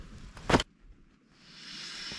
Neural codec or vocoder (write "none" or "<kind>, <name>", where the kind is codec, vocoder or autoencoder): none